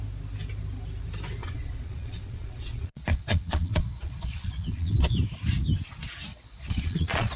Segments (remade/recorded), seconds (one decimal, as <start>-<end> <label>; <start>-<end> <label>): 0.0-1.4 recorded; 1.4-5.1 remade; 5.1-6.3 recorded; 6.3-7.4 remade